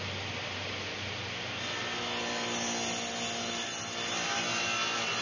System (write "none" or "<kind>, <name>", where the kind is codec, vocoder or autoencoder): none